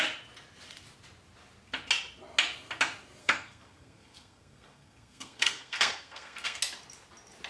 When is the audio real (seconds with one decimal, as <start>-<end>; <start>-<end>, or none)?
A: 0.0-3.2; 6.6-7.5